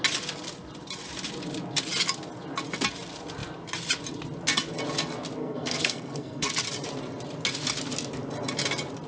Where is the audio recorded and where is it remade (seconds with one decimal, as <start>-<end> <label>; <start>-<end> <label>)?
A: 0.0-5.4 recorded; 5.4-6.5 remade; 6.5-9.1 recorded